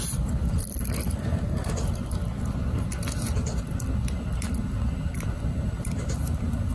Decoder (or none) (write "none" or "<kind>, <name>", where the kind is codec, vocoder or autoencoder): none